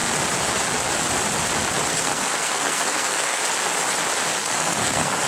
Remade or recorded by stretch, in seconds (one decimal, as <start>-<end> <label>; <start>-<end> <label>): 0.0-1.9 recorded; 1.9-3.4 remade; 3.4-4.4 recorded; 4.4-5.3 remade